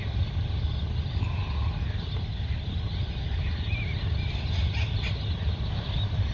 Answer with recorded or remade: recorded